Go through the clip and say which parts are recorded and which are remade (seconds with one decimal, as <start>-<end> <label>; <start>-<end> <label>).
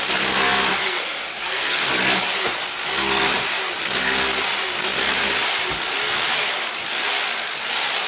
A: 0.0-0.7 recorded; 0.7-1.9 remade; 1.9-8.1 recorded